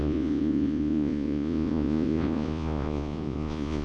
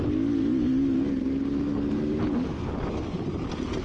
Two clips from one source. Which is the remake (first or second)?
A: first